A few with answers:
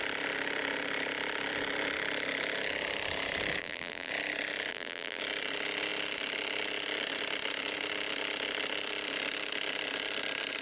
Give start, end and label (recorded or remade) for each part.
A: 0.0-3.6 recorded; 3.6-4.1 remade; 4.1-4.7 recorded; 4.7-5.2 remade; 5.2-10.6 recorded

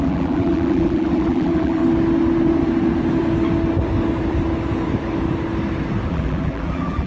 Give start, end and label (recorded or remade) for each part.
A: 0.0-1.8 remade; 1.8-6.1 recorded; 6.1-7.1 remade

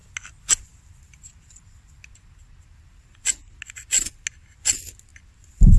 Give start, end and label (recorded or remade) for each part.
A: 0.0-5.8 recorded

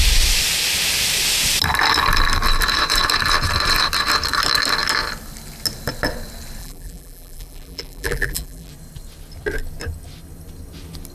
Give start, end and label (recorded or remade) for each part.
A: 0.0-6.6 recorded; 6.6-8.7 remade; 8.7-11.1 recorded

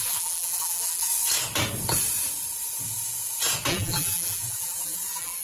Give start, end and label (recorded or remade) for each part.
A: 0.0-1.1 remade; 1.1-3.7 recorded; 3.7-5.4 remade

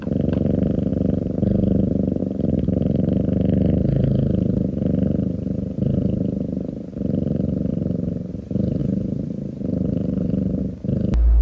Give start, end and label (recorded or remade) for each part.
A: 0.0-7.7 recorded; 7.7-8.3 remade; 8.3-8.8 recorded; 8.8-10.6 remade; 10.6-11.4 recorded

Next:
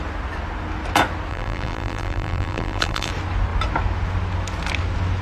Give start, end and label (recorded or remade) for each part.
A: 0.0-1.3 recorded; 1.3-3.1 remade; 3.1-5.2 recorded

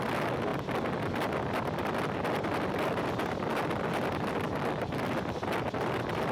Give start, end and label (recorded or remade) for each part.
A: 0.0-6.3 recorded